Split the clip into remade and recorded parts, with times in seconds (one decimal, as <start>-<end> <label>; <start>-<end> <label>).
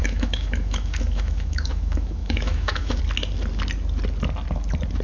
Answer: 0.0-3.0 remade; 3.0-5.0 recorded